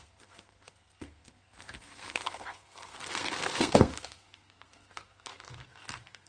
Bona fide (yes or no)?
no